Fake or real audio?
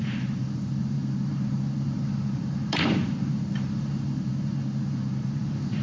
fake